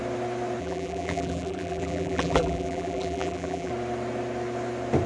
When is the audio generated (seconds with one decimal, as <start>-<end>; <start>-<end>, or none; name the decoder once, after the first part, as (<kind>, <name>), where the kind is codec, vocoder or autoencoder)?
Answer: 0.6-3.7 (vocoder, BigVGAN v2)